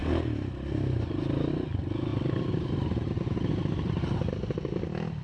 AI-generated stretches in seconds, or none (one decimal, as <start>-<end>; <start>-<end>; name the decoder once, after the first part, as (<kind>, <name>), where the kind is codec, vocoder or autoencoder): none